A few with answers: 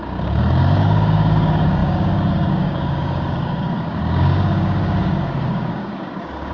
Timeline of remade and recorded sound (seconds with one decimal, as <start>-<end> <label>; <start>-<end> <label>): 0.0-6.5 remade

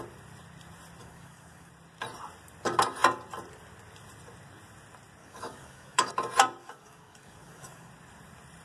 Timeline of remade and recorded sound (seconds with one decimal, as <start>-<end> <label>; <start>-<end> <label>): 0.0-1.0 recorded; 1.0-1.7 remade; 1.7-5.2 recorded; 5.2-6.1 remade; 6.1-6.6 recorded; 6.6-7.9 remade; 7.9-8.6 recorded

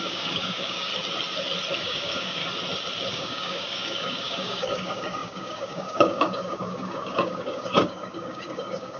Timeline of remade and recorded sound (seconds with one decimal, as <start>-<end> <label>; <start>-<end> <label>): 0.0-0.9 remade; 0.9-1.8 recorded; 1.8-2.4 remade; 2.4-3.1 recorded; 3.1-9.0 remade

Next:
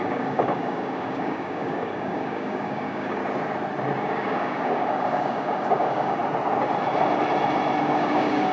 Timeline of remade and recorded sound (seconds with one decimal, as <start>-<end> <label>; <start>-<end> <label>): 0.0-3.2 remade; 3.2-4.0 recorded; 4.0-6.2 remade; 6.2-7.8 recorded; 7.8-8.5 remade

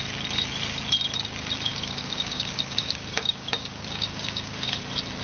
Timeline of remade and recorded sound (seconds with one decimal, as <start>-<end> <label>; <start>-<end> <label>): 0.0-1.7 recorded; 1.7-4.8 remade; 4.8-5.2 recorded

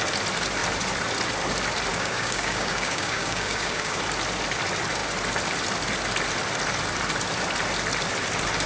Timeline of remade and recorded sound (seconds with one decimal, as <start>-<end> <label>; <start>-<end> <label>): 0.0-1.9 recorded; 1.9-4.0 remade; 4.0-8.7 recorded